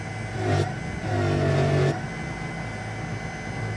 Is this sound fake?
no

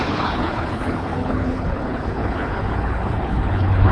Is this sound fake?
yes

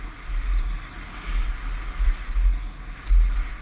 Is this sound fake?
no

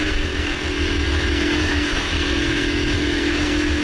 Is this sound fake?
yes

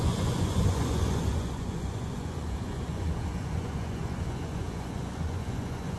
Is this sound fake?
yes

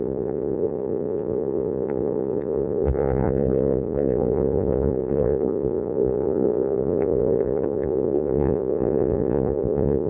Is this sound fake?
yes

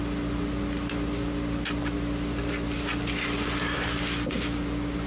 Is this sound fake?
no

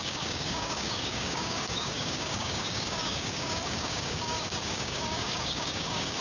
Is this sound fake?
yes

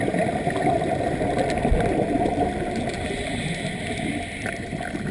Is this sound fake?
no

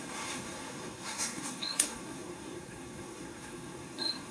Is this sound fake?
yes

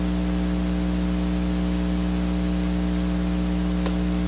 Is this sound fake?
no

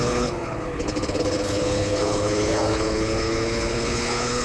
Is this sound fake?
yes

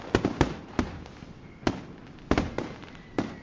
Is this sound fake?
no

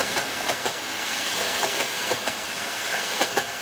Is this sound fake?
yes